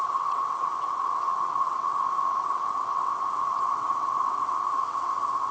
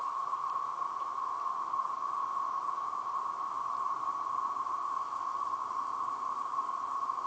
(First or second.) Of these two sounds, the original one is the second